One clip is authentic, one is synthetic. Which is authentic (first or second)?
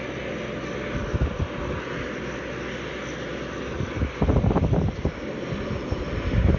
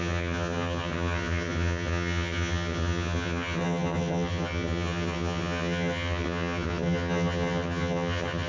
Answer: first